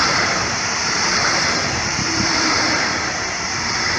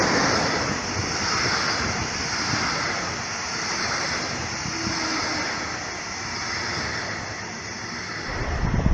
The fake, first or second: first